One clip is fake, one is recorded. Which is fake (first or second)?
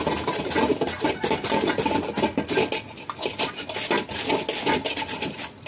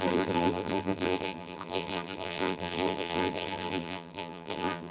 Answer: second